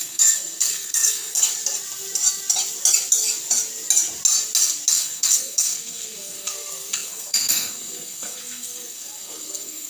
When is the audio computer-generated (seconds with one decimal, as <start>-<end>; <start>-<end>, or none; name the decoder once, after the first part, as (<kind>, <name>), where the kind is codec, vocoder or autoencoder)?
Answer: 0.0-1.5 (codec, SNAC); 4.9-9.9